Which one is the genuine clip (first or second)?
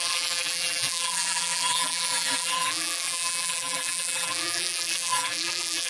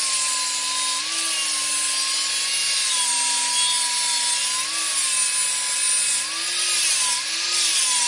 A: second